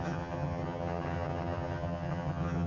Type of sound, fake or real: fake